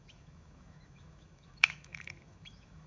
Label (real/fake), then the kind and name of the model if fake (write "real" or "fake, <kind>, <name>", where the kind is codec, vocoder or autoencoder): fake, autoencoder, DAC-VAE